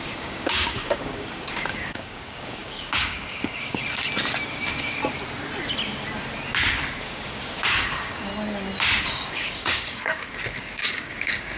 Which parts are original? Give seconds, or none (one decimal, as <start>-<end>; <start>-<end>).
3.8-4.5; 5.0-7.0; 8.3-9.0